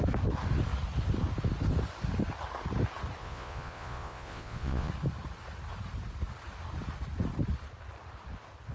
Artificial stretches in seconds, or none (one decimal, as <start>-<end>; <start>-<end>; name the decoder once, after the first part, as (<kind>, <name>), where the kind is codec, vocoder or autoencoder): 3.2-4.9 (vocoder, Vocos)